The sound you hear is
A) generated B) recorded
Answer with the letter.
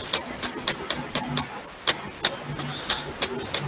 B